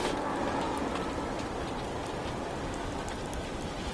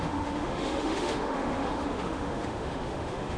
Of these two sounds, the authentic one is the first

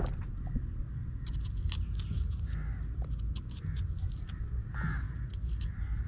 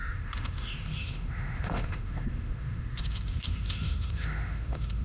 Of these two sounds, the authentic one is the first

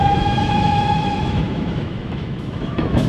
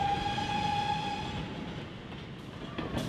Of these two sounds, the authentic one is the second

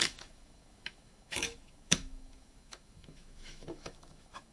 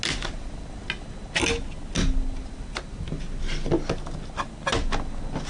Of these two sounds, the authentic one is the second